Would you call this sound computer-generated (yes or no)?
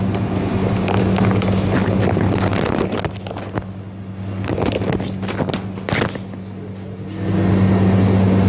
no